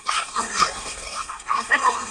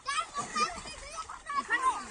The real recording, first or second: second